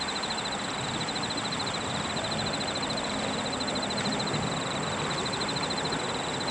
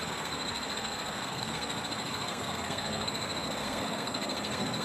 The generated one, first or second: second